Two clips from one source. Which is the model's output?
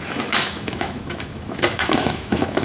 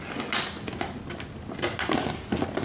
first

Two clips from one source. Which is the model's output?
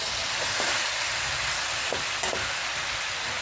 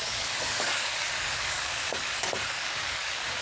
second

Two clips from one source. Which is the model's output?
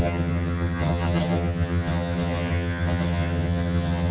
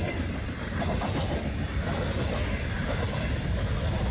first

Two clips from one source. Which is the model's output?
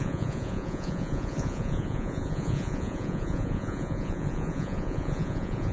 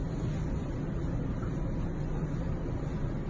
first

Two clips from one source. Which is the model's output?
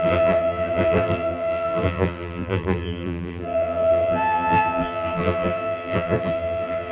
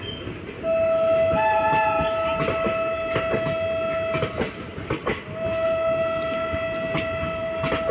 first